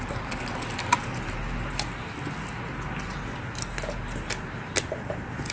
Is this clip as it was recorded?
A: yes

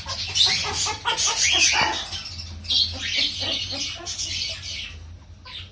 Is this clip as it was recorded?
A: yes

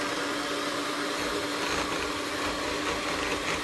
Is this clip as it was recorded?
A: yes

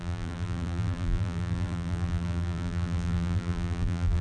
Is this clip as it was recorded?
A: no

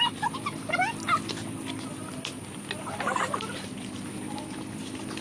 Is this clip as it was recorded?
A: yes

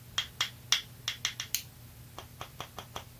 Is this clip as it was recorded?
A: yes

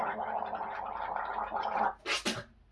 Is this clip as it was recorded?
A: yes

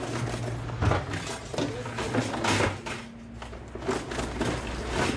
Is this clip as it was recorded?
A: yes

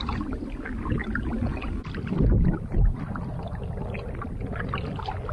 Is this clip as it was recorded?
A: yes